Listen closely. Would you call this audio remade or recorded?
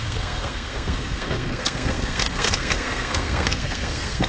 remade